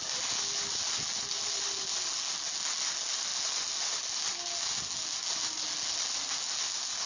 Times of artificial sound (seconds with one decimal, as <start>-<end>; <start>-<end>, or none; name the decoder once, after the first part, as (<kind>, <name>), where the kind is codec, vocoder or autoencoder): none